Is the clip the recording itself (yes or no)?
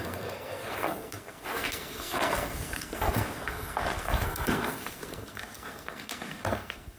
no